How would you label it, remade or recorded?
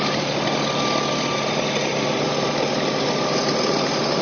recorded